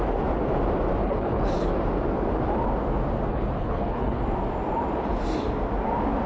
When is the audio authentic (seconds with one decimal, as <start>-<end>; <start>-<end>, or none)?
0.0-1.0; 1.7-3.3; 4.2-6.3

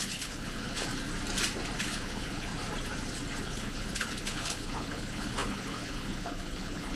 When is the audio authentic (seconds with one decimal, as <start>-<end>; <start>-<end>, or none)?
0.9-1.8; 2.5-3.4